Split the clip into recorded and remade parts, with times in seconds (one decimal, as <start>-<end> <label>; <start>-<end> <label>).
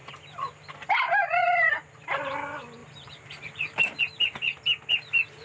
0.0-2.0 remade; 2.0-2.8 recorded; 2.8-4.0 remade; 4.0-5.4 recorded